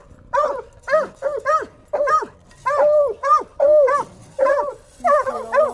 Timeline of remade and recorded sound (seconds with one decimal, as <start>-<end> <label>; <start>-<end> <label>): 0.0-5.7 recorded